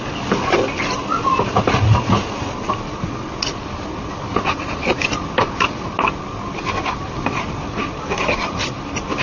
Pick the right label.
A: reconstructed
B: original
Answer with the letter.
B